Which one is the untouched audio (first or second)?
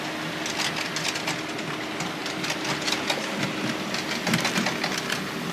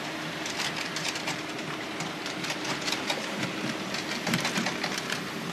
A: first